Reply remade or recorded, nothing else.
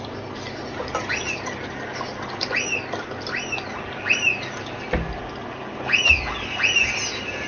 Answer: recorded